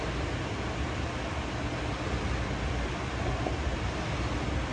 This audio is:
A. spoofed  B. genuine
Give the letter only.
B